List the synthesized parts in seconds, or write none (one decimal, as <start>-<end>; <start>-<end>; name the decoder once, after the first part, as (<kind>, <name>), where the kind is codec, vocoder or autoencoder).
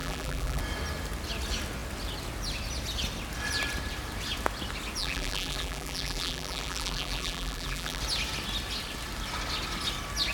0.0-0.6 (vocoder, BigVGAN v2); 5.0-8.0